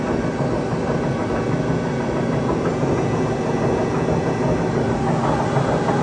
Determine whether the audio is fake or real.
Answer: real